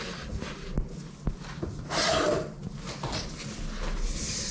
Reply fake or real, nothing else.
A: real